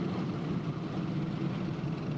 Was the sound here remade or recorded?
recorded